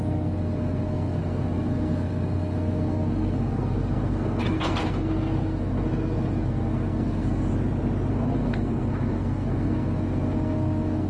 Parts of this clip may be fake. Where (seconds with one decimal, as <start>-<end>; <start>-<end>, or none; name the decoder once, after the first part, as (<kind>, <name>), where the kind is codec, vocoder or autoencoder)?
0.0-7.5 (codec, SNAC); 8.1-11.1